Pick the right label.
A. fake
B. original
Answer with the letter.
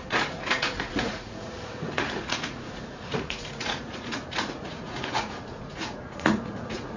A